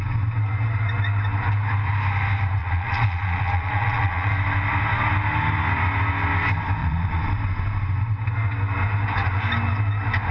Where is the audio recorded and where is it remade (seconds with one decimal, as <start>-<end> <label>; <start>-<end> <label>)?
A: 0.0-2.6 recorded; 2.6-4.3 remade; 4.3-6.8 recorded; 6.8-7.3 remade; 7.3-10.3 recorded